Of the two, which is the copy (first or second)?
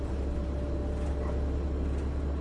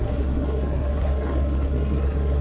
second